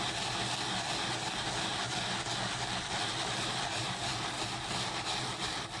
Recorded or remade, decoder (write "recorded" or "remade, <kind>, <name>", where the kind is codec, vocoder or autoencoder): recorded